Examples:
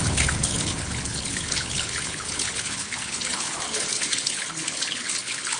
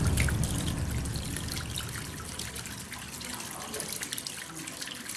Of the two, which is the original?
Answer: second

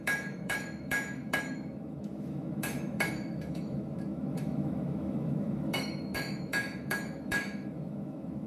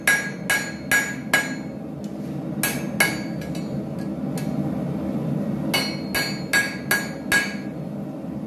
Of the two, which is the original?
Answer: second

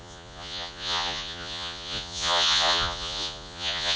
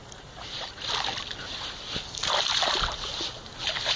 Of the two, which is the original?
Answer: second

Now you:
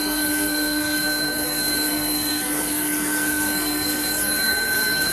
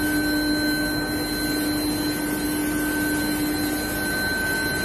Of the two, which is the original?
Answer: second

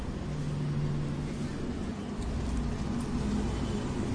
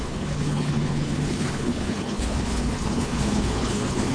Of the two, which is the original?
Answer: first